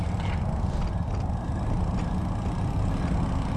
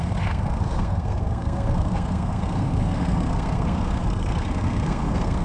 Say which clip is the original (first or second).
first